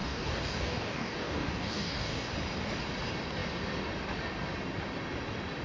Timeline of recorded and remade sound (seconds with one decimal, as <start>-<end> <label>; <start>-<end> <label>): 0.0-2.3 remade; 2.3-5.6 recorded